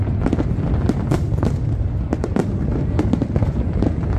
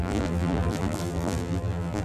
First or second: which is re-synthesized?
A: second